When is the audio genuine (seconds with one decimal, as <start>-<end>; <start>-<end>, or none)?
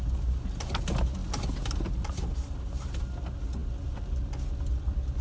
0.0-5.2